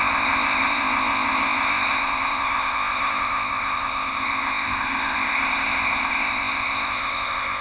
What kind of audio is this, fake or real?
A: fake